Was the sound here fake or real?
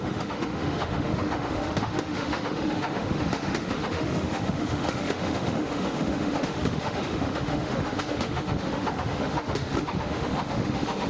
fake